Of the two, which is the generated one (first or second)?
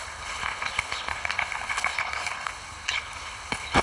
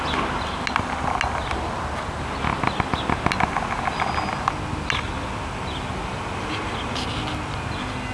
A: first